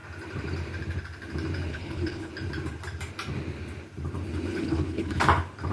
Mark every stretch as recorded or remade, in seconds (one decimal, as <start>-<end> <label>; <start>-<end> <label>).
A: 0.0-1.7 recorded; 1.7-2.3 remade; 2.3-4.5 recorded; 4.5-5.2 remade; 5.2-5.7 recorded